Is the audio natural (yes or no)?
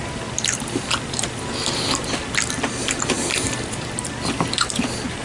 yes